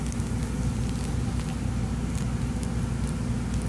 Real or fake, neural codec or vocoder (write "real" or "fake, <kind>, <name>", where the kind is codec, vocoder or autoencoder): real